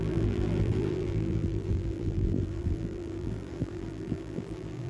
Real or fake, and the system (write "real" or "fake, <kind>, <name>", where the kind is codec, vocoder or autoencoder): fake, vocoder, BigVGAN v2